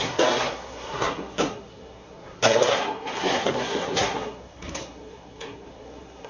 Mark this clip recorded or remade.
remade